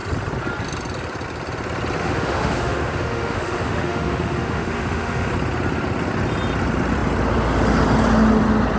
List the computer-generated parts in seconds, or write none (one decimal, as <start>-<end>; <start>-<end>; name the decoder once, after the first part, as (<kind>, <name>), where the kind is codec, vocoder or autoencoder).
2.0-5.3 (autoencoder, DAC-VAE)